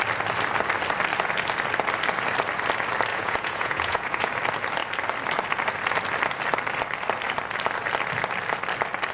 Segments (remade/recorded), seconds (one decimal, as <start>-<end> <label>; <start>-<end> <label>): 0.0-3.1 recorded; 3.1-4.3 remade; 4.3-9.1 recorded